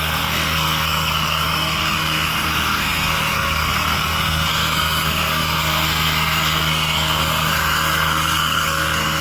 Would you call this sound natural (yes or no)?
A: no